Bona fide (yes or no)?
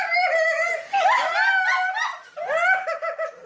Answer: yes